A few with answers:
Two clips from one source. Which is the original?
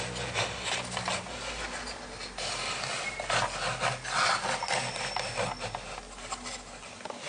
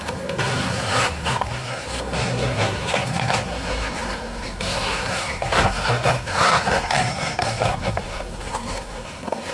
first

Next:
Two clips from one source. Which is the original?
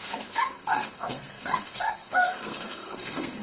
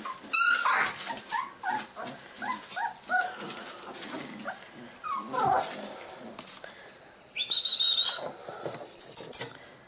second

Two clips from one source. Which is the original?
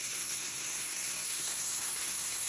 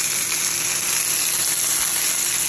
second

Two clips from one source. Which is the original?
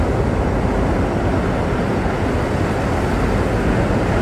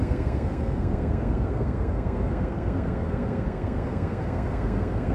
first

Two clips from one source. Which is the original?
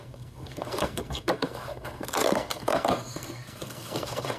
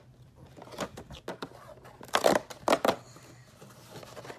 second